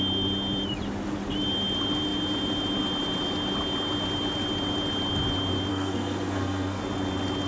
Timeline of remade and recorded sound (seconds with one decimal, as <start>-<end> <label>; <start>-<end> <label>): 0.0-5.7 recorded; 5.7-6.8 remade; 6.8-7.5 recorded

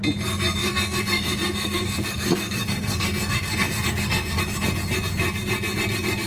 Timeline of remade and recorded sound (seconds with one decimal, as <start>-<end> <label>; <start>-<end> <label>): 0.0-0.6 recorded; 0.6-4.4 remade; 4.4-6.3 recorded

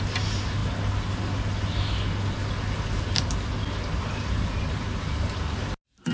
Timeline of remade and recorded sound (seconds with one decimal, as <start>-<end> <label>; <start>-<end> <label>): 0.0-6.1 recorded

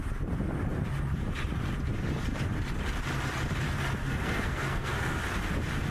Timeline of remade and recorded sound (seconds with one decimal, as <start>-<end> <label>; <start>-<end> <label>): 0.0-4.0 recorded; 4.0-5.2 remade; 5.2-5.9 recorded

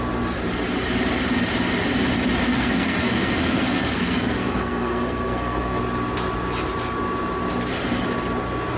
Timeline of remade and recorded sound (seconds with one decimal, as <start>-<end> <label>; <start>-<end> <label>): 0.0-2.5 recorded; 2.5-5.8 remade; 5.8-8.8 recorded

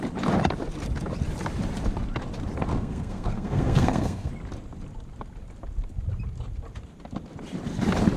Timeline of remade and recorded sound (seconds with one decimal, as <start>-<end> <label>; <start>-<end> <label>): 0.0-2.7 recorded; 2.7-4.3 remade; 4.3-8.2 recorded

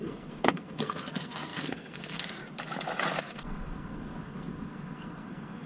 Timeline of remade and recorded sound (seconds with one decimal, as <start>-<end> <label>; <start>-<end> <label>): 0.0-2.4 remade; 2.4-3.2 recorded; 3.2-5.7 remade

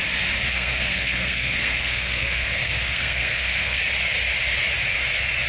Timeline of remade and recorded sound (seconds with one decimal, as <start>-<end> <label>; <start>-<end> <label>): 0.0-0.5 recorded; 0.5-3.8 remade; 3.8-5.5 recorded